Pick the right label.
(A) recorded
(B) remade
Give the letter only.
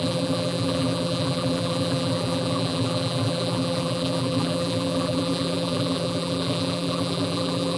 B